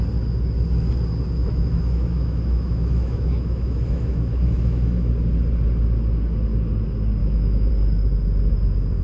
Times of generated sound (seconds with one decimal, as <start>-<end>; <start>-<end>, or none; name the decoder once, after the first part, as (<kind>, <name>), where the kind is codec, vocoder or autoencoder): 1.4-5.1 (autoencoder, DAC-VAE); 7.2-7.7